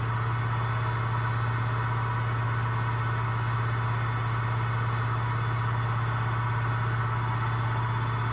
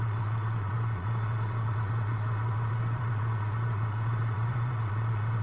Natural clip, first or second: first